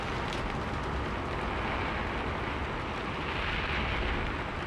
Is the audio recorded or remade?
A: recorded